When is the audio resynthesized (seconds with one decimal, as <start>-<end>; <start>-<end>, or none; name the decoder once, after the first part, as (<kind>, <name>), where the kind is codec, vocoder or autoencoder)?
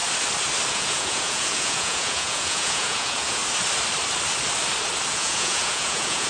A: 0.7-3.4 (vocoder, Vocos); 5.1-6.3